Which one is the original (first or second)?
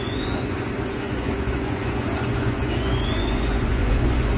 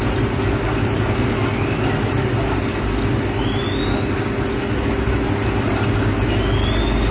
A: second